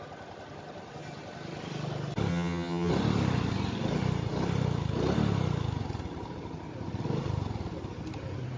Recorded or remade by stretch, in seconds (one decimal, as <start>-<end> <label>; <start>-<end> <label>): 0.0-2.3 recorded; 2.3-2.9 remade; 2.9-8.6 recorded